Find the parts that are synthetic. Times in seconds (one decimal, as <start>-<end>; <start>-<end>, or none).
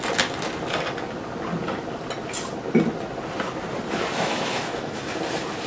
4.1-5.0